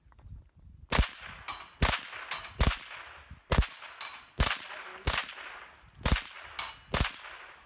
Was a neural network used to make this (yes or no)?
no